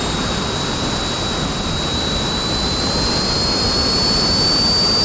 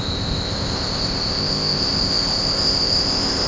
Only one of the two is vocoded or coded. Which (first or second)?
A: second